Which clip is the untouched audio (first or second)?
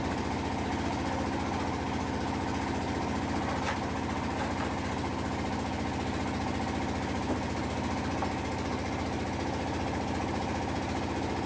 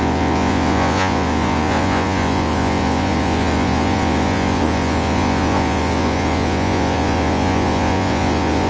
first